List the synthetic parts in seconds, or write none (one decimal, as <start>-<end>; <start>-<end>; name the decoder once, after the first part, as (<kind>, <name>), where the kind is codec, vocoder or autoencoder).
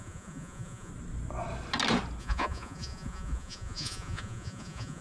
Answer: 0.0-0.9 (vocoder, Vocos); 2.2-5.0